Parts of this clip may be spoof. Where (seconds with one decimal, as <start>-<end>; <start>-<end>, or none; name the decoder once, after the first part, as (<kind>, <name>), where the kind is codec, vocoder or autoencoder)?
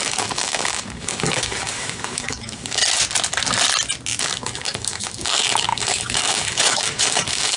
0.0-2.8 (codec, DAC); 4.2-7.6